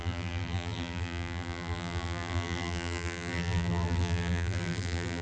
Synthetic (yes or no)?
yes